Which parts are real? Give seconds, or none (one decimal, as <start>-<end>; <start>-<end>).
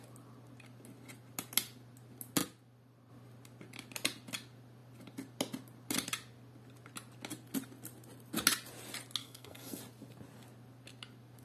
0.0-9.2; 9.8-11.4